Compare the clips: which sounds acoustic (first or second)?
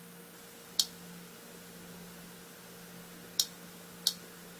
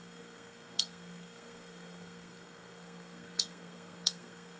first